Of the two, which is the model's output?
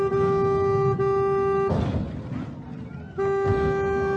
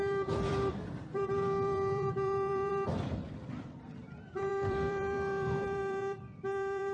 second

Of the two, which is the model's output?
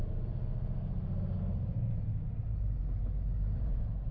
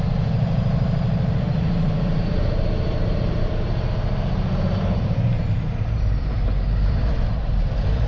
second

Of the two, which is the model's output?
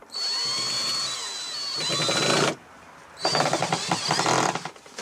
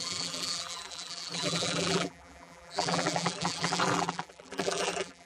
second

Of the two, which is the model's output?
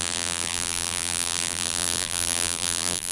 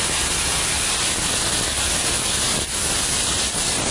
first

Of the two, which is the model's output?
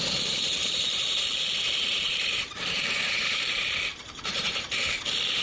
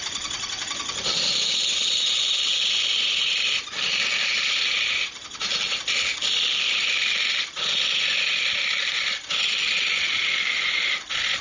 first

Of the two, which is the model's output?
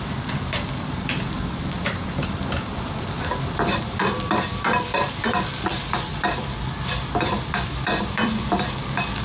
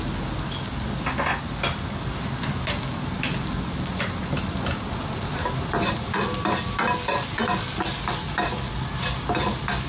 first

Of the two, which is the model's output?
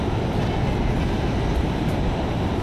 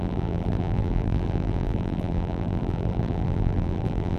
second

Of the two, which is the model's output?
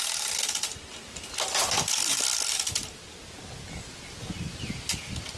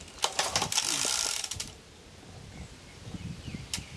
second